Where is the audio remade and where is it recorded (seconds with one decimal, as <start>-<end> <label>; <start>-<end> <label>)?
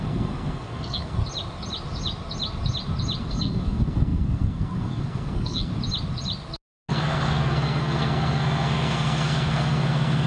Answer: 0.0-1.2 remade; 1.2-3.2 recorded; 3.2-5.7 remade; 5.7-6.9 recorded; 6.9-10.3 remade